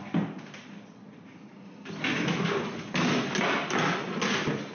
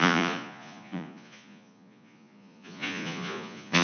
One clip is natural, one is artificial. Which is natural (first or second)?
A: first